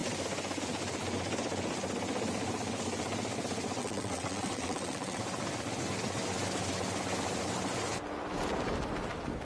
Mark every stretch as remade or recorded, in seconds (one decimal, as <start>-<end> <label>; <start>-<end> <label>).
0.0-3.8 recorded; 3.8-5.2 remade; 5.2-9.4 recorded